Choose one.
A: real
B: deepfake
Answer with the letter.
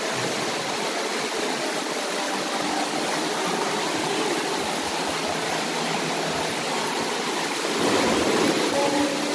A